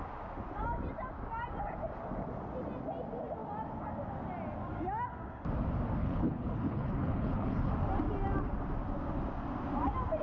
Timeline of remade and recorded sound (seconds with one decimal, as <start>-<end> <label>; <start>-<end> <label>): 0.0-6.0 recorded; 6.0-7.7 remade; 7.7-10.2 recorded